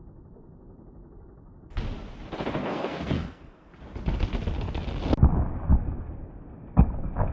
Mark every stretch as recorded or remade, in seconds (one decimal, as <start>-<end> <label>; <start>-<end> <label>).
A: 0.0-2.6 recorded; 2.6-3.7 remade; 3.7-7.3 recorded